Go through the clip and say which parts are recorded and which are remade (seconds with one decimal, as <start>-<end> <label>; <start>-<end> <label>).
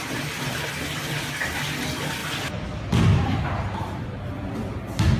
0.0-5.2 recorded